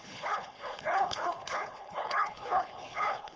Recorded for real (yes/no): no